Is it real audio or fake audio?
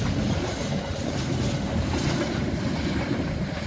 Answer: real